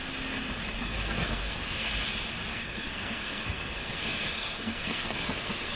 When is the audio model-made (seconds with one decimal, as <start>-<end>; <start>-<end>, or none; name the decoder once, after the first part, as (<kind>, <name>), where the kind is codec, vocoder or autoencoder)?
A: 0.8-1.9 (codec, SNAC); 2.5-5.8